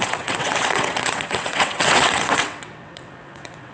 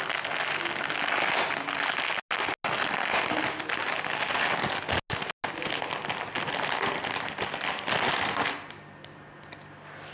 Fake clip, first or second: first